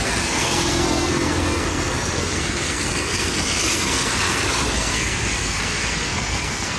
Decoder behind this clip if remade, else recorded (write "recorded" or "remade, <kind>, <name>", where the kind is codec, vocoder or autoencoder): remade, codec, SNAC